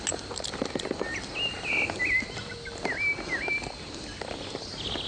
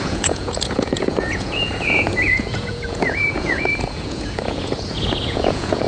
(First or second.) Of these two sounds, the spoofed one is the second